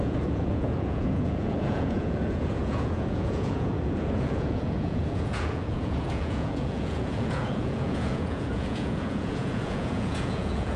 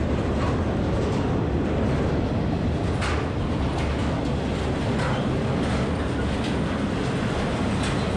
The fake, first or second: first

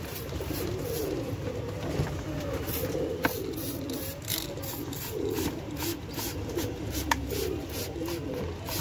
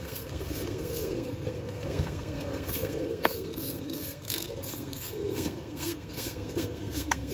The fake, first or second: second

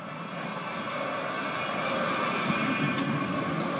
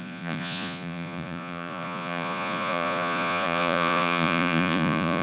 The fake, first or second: second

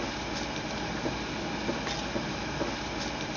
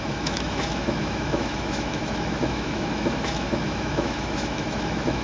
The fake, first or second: second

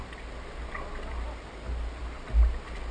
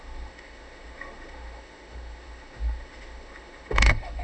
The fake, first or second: second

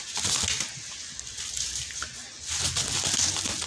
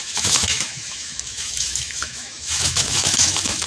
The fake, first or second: second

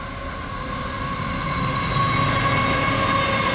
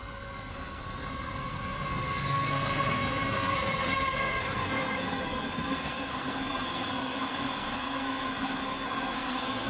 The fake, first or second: second